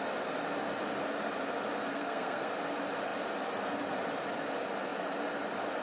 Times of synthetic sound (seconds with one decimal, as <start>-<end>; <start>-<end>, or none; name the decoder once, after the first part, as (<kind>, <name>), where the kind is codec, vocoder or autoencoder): 1.9-2.5 (codec, SNAC)